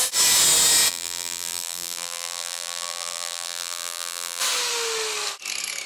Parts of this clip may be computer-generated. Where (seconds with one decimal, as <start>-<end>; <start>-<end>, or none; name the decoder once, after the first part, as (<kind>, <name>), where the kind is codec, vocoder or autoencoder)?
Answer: 0.9-4.4 (vocoder, BigVGAN v2)

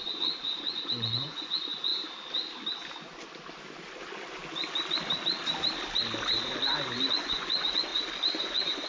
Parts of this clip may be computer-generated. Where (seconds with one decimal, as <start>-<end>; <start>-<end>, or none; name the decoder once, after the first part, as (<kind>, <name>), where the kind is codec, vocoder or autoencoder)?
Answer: 0.0-1.9 (vocoder, Vocos); 7.1-7.9; 8.4-8.9

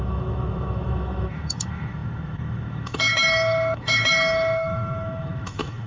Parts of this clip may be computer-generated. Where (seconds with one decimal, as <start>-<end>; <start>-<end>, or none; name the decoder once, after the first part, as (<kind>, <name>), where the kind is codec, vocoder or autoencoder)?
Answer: 0.0-5.9 (autoencoder, DAC-VAE)

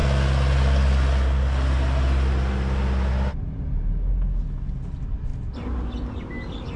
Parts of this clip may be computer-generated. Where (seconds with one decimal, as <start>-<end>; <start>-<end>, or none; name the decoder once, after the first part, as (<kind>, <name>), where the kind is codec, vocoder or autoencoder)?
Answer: none

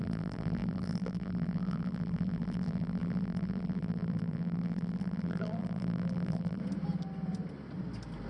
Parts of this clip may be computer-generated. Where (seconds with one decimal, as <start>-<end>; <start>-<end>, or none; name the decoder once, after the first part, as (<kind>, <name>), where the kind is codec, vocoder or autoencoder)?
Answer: 0.0-6.6 (vocoder, BigVGAN v2)

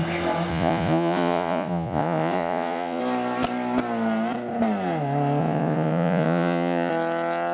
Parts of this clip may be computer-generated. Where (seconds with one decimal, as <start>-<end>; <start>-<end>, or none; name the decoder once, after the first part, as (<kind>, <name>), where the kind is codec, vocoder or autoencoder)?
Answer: 0.5-3.0 (vocoder, Vocos); 5.4-6.9